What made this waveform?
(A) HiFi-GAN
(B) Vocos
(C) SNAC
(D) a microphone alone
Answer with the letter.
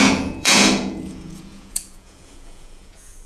B